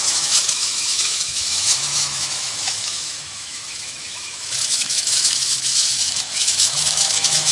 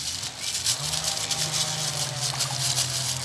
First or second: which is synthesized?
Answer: first